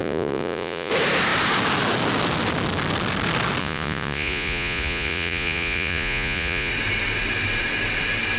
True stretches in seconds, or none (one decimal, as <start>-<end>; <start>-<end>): 0.9-3.6; 6.7-8.4